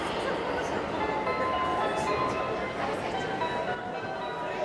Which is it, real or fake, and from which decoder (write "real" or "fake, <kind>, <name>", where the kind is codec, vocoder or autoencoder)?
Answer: real